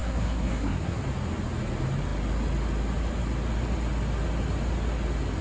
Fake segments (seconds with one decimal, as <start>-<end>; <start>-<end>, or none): 0.0-1.0